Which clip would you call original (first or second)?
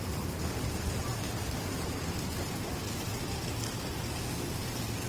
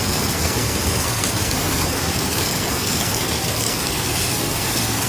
first